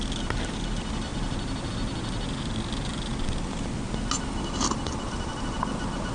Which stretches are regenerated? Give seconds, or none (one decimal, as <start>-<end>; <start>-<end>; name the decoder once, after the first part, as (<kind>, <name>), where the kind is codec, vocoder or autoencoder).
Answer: none